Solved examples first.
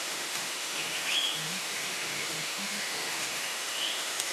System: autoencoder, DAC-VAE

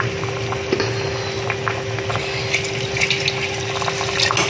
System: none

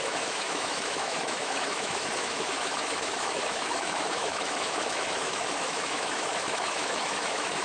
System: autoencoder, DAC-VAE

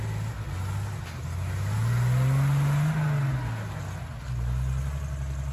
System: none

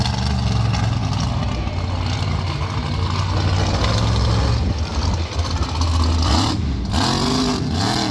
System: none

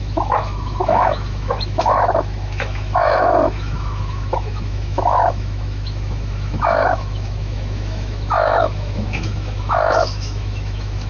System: autoencoder, DAC-VAE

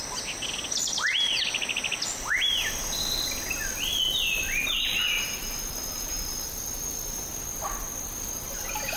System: none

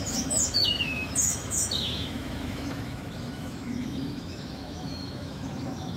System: autoencoder, DAC-VAE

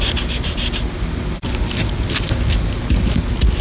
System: none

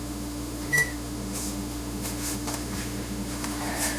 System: autoencoder, DAC-VAE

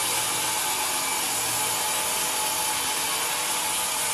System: none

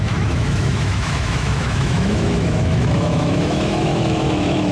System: autoencoder, DAC-VAE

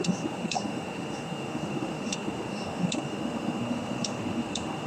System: autoencoder, DAC-VAE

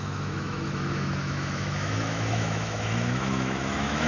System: autoencoder, DAC-VAE